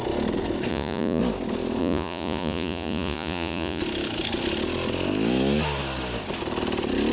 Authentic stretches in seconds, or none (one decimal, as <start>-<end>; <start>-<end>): 0.0-0.7; 1.2-1.8; 3.8-7.1